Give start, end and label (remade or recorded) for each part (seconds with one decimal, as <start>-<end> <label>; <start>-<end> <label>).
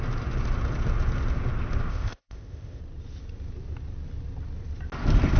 0.0-1.9 recorded; 1.9-2.8 remade; 2.8-5.4 recorded